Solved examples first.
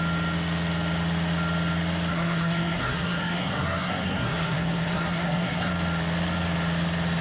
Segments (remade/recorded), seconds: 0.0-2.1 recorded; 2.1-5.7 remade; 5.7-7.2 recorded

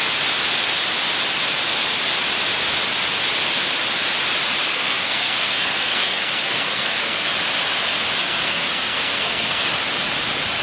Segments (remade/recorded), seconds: 0.0-4.7 recorded; 4.7-7.3 remade; 7.3-8.2 recorded; 8.2-9.7 remade; 9.7-10.6 recorded

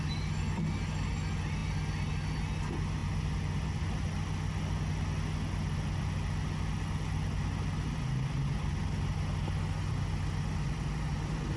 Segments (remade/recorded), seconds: 0.0-11.6 recorded

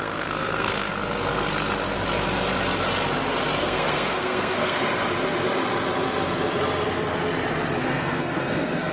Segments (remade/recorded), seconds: 0.0-0.9 remade; 0.9-3.6 recorded; 3.6-4.8 remade; 4.8-7.8 recorded; 7.8-8.9 remade

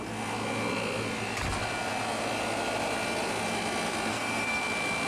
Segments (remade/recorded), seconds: 0.0-4.1 recorded; 4.1-4.6 remade; 4.6-5.1 recorded

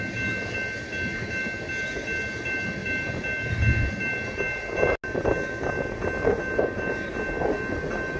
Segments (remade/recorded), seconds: 0.0-8.2 recorded